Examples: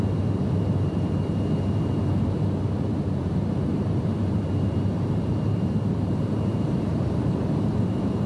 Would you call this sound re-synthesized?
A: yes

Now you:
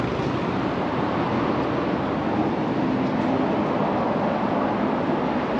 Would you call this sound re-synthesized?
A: no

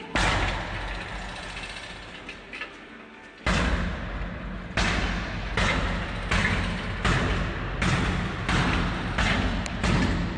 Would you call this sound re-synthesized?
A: no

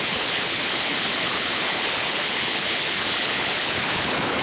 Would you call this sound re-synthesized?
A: yes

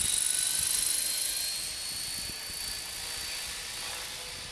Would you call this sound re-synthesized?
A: no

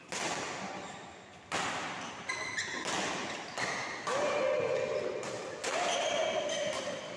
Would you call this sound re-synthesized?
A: no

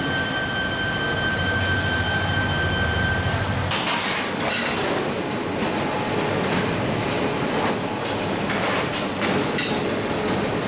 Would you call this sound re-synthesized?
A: no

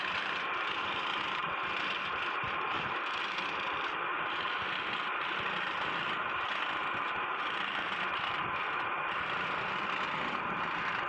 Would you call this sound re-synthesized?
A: yes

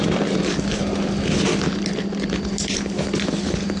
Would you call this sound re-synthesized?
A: no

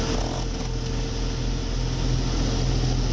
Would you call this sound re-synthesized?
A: no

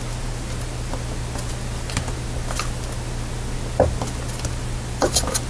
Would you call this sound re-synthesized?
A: no